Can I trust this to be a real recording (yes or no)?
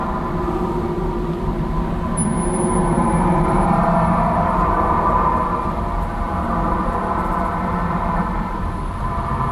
no